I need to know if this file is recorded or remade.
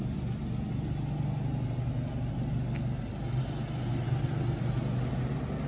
recorded